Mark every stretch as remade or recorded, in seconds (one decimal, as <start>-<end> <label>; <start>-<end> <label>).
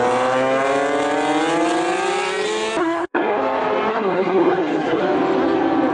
0.0-2.8 recorded; 2.8-3.4 remade; 3.4-3.9 recorded; 3.9-5.0 remade; 5.0-5.9 recorded